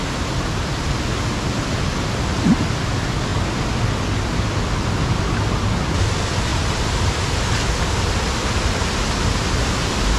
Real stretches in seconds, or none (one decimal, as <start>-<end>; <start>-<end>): 0.0-10.2